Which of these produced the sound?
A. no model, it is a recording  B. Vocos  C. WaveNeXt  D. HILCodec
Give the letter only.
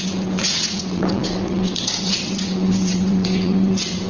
C